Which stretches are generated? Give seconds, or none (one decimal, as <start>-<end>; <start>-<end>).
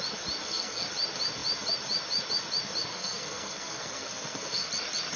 0.4-0.9; 2.9-4.7